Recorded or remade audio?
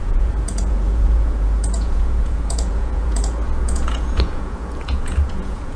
remade